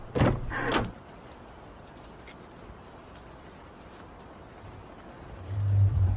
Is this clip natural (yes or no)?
yes